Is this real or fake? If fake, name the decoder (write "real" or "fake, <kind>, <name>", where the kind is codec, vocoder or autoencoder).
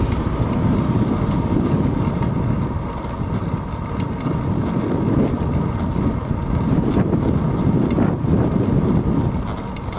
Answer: real